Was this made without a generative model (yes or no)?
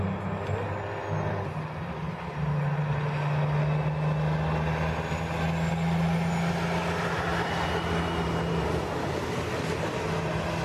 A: yes